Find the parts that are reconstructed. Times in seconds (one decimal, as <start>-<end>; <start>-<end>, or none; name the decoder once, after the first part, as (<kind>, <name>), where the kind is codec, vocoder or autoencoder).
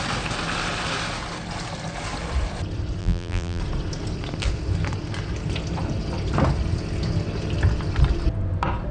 3.0-3.6 (vocoder, BigVGAN v2)